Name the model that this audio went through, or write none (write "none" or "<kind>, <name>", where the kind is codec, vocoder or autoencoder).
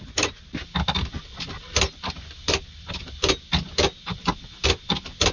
none